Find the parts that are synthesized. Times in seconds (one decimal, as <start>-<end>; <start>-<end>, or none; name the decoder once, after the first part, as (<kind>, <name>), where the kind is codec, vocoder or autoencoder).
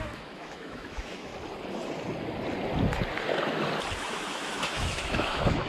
0.0-1.3 (autoencoder, DAC-VAE); 4.0-5.7